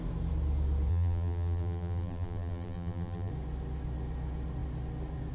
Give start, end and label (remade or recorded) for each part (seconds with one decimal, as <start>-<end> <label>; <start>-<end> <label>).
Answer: 0.0-0.9 recorded; 0.9-3.3 remade; 3.3-5.3 recorded